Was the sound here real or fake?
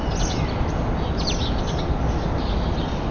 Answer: real